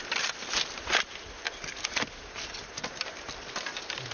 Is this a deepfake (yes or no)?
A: no